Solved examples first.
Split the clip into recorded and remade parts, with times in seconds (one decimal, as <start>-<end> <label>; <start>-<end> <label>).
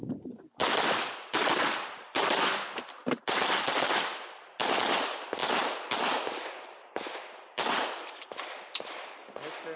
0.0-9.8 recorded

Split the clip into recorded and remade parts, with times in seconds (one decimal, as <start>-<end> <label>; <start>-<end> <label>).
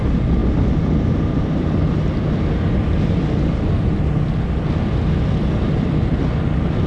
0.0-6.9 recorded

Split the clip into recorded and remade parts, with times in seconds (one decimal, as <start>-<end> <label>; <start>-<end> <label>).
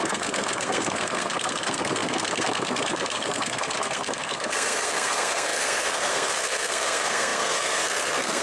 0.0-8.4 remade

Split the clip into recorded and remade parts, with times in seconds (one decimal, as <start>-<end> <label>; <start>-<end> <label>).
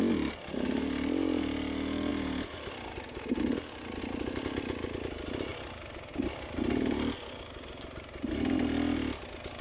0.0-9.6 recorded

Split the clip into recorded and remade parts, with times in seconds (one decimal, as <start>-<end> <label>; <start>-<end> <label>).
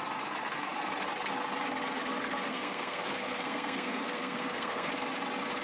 0.0-2.5 recorded; 2.5-4.9 remade; 4.9-5.6 recorded